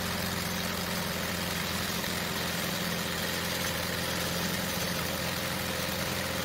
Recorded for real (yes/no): yes